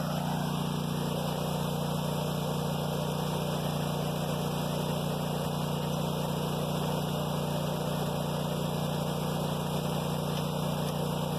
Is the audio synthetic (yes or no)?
no